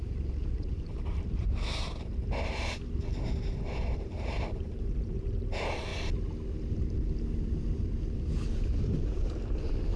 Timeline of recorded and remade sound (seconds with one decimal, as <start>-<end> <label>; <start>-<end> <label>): 0.0-5.9 remade; 5.9-8.5 recorded; 8.5-10.0 remade